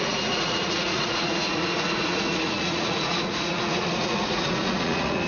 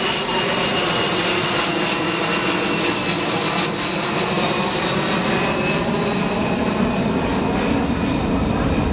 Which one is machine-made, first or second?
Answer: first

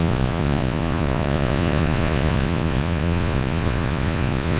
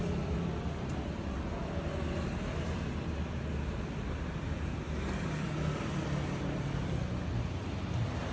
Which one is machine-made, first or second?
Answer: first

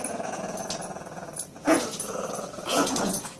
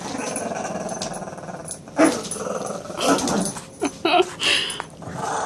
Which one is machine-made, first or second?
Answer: first